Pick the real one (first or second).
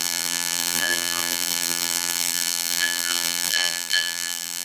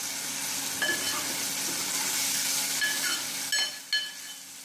second